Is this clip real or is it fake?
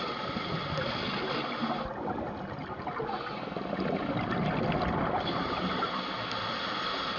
real